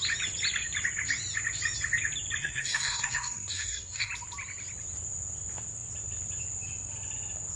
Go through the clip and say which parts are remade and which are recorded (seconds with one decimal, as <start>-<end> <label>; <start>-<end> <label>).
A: 0.0-2.4 recorded; 2.4-4.1 remade; 4.1-7.6 recorded